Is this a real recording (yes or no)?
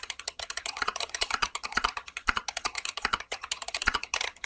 no